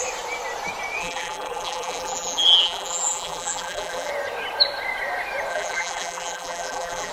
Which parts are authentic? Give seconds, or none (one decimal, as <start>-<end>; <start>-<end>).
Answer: 0.0-1.0; 4.1-5.5